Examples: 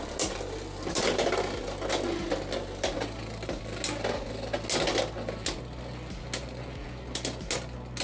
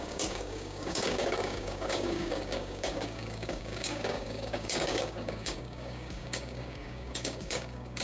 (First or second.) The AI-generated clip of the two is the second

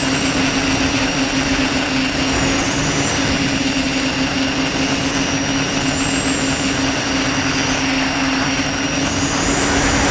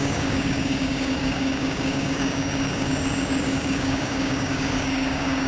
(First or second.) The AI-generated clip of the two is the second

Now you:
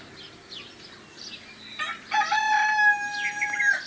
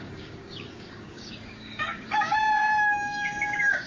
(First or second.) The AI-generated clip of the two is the second